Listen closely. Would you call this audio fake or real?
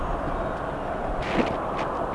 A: real